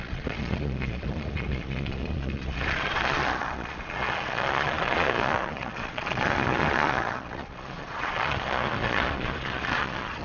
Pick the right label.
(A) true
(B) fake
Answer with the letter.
B